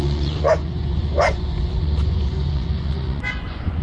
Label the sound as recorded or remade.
remade